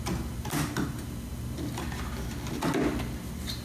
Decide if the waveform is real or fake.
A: real